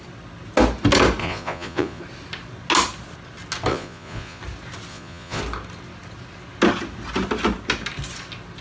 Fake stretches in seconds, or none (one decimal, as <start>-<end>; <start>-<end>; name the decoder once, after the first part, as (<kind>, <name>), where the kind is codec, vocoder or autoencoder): 1.2-2.0 (vocoder, Vocos); 3.7-4.4; 4.9-5.4